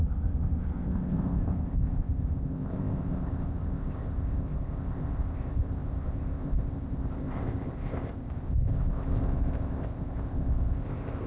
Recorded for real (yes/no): no